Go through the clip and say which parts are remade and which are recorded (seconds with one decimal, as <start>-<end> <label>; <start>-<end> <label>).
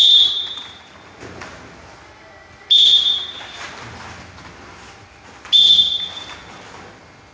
0.0-0.8 remade; 0.8-7.3 recorded